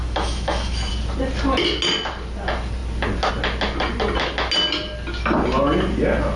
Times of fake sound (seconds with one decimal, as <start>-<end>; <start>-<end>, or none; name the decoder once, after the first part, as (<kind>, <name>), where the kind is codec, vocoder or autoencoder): 0.0-0.9 (autoencoder, DAC-VAE)